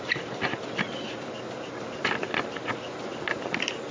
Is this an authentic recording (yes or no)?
yes